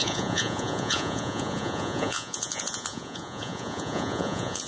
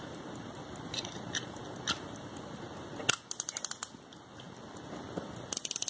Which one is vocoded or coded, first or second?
first